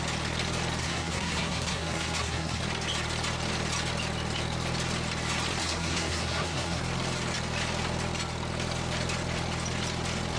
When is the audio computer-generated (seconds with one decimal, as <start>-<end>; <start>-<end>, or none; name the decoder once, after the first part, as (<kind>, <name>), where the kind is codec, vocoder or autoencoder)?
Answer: 0.8-2.6 (codec, SNAC); 5.6-6.8